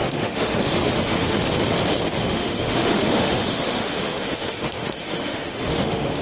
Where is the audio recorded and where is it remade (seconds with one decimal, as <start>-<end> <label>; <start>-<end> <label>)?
0.0-1.4 remade; 1.4-2.2 recorded; 2.2-6.2 remade